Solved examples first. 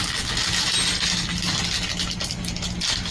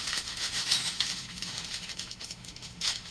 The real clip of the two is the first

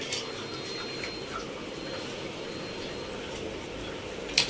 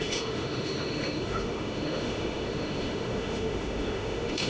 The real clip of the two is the first